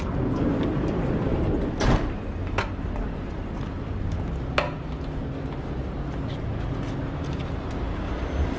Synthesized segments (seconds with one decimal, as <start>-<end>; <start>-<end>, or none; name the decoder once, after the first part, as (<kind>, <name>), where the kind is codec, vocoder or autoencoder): none